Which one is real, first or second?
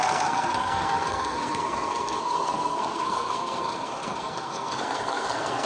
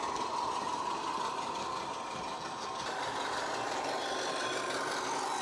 second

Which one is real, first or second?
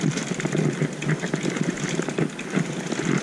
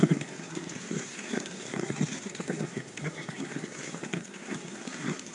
first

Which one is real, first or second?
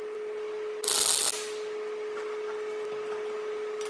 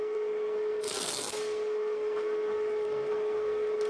first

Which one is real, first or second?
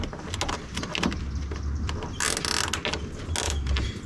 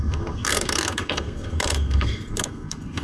first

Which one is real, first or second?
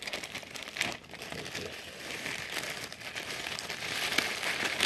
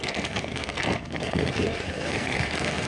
first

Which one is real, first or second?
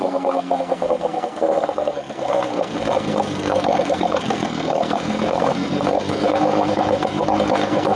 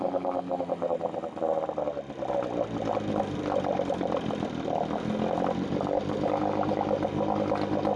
second